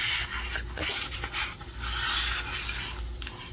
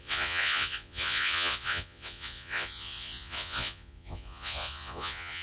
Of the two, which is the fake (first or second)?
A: second